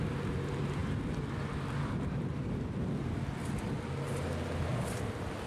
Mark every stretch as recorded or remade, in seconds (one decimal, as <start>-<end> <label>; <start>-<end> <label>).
0.0-0.8 remade; 0.8-1.7 recorded; 1.7-2.3 remade; 2.3-4.7 recorded; 4.7-5.5 remade